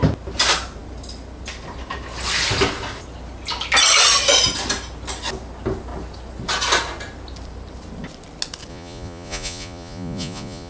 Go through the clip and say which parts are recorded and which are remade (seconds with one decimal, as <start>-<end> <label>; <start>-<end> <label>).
0.0-8.7 recorded; 8.7-10.7 remade